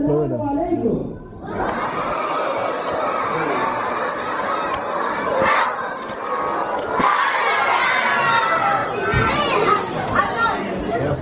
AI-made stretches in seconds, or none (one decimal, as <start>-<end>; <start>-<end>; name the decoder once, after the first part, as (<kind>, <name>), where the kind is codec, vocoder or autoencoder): 1.0-5.2 (vocoder, BigVGAN v2); 8.8-9.4